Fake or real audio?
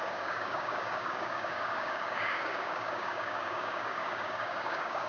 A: fake